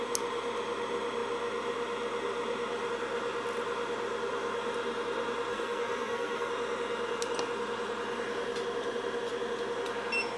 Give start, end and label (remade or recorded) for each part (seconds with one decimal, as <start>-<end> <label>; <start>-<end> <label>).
0.0-5.5 recorded; 5.5-6.5 remade; 6.5-10.4 recorded